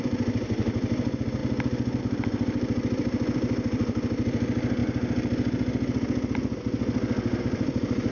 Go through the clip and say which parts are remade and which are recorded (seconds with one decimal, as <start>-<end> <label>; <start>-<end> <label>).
0.0-1.4 remade; 1.4-2.0 recorded; 2.0-4.8 remade; 4.8-7.4 recorded; 7.4-8.1 remade